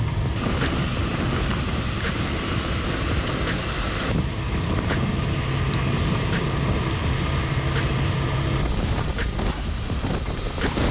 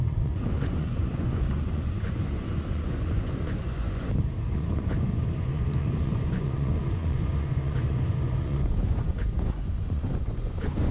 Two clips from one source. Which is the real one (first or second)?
first